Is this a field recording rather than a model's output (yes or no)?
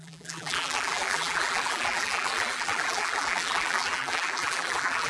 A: no